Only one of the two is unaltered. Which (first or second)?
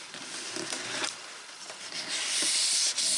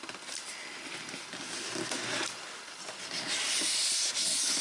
second